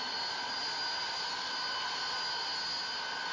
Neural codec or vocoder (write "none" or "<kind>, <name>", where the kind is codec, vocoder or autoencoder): none